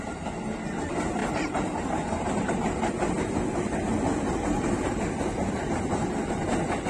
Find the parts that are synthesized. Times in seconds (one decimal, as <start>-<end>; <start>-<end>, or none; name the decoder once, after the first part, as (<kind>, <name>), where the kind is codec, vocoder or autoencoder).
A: 1.2-2.9 (vocoder, BigVGAN v2); 4.5-5.0